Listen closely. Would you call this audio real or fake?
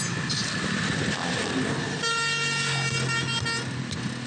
real